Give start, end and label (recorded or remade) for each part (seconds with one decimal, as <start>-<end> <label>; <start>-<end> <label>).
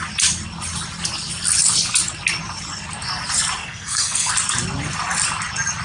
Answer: 0.0-3.6 recorded; 3.6-4.3 remade; 4.3-5.8 recorded